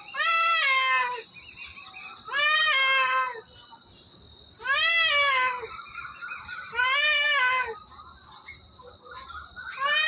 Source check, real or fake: real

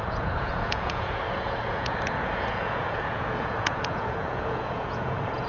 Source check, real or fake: fake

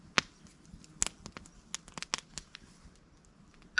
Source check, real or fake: real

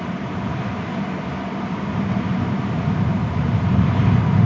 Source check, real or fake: real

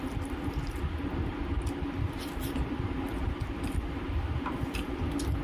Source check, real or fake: real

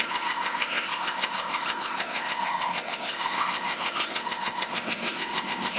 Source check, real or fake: fake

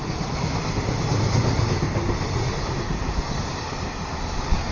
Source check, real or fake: real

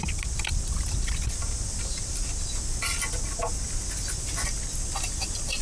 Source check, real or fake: real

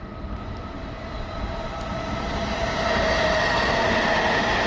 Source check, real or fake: real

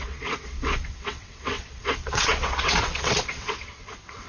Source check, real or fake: fake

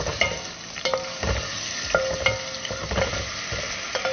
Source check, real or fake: real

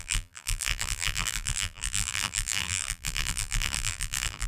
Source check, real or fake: fake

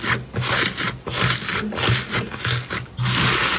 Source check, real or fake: real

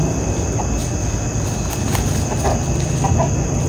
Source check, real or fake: real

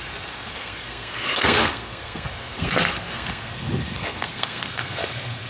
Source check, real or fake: fake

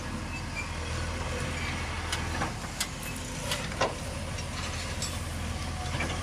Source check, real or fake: real